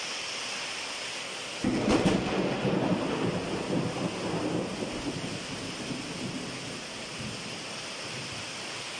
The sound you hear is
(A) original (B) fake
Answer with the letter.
A